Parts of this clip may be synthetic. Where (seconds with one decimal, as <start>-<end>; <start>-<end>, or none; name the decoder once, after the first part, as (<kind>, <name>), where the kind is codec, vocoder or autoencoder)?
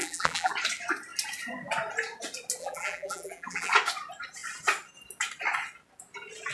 0.0-0.5 (vocoder, BigVGAN v2); 2.6-3.7